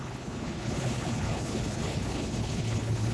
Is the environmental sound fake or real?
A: fake